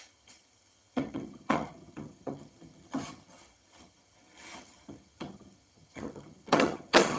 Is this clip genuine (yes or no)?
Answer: no